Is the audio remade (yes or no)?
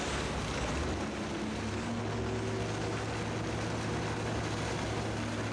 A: no